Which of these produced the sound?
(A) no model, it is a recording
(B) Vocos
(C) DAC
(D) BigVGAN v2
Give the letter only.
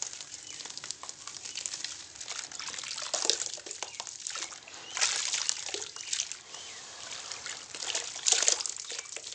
A